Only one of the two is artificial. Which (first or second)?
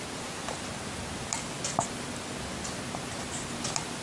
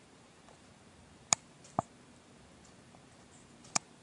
second